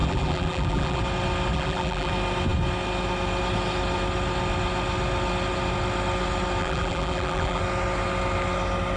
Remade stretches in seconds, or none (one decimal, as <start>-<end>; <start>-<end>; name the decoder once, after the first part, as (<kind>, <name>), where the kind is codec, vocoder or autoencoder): 0.0-1.0 (vocoder, BigVGAN v2); 1.5-2.1; 6.6-7.6